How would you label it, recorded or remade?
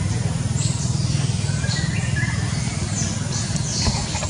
recorded